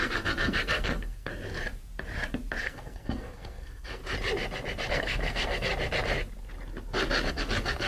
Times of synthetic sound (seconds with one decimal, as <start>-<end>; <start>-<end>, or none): 0.0-1.3; 2.6-4.0; 4.9-5.7; 7.3-7.9